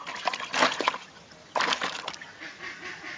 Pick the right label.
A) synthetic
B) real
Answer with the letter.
B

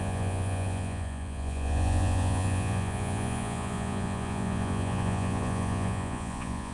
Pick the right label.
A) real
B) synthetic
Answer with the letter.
B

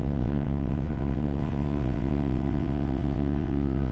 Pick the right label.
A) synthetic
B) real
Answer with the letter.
A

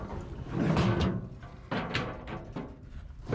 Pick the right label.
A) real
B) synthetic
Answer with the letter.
A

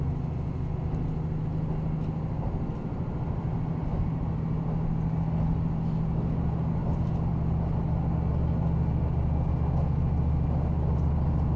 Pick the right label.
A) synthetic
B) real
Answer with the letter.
B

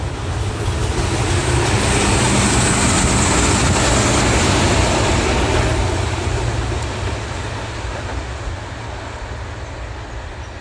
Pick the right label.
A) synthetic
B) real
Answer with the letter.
B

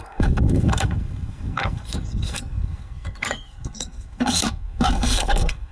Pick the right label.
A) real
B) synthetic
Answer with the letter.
B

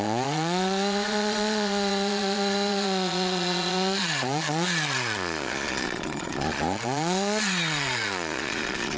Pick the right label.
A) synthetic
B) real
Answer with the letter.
A